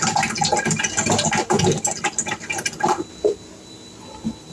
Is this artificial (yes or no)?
no